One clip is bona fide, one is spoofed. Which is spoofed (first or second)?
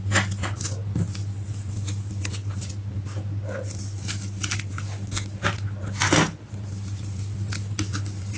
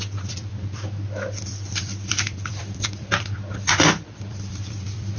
second